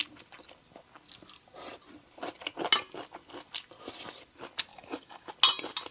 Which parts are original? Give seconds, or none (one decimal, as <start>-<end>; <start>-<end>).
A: 0.0-4.7; 5.3-5.9